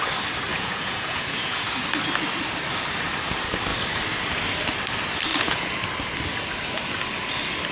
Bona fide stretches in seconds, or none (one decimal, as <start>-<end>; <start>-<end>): 0.0-0.5; 1.7-5.3; 5.8-7.7